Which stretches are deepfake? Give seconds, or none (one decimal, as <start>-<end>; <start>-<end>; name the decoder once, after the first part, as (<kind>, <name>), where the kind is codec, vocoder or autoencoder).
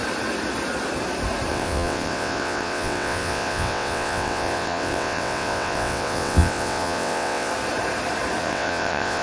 1.5-7.5 (vocoder, WaveNeXt); 8.4-9.2